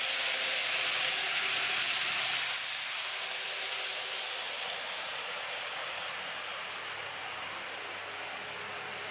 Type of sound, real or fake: real